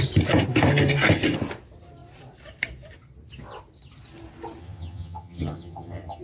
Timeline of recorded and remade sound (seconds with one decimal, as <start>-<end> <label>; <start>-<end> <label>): 0.0-4.6 recorded; 4.6-6.2 remade